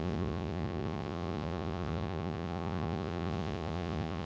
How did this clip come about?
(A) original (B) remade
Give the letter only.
B